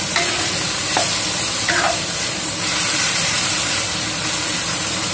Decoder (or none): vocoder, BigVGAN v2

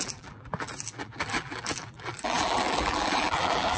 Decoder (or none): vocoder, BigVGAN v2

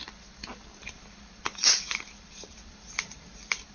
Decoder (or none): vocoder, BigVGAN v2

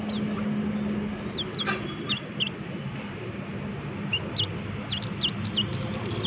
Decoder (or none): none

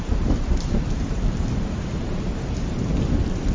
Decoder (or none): vocoder, BigVGAN v2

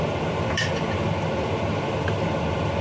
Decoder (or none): vocoder, BigVGAN v2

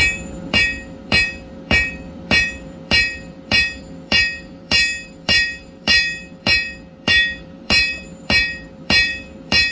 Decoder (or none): vocoder, BigVGAN v2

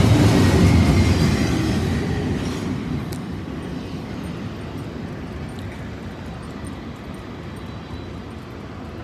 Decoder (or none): none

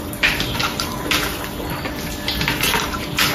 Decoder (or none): none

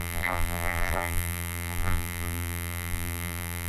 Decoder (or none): vocoder, BigVGAN v2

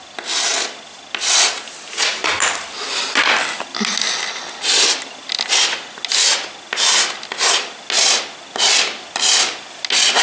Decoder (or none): none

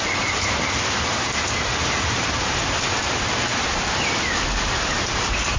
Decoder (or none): none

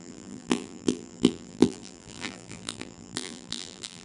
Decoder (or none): vocoder, BigVGAN v2